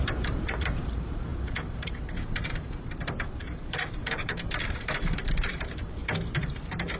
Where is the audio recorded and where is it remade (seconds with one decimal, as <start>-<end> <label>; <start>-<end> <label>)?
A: 0.0-7.0 remade

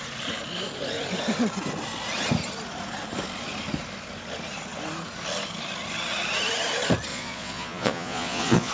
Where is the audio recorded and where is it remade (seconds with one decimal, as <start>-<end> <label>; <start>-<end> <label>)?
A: 0.0-7.1 recorded; 7.1-8.7 remade